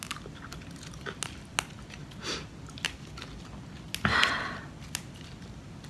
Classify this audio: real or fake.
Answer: real